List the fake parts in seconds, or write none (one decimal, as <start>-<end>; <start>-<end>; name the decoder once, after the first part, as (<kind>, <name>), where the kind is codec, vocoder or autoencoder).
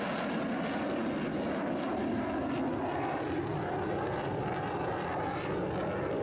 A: none